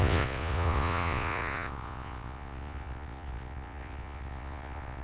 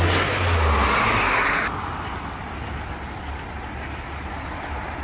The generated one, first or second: first